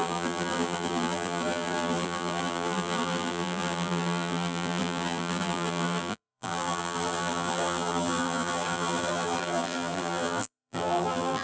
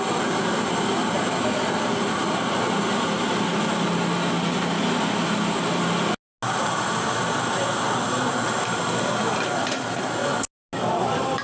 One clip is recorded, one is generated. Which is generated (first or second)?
first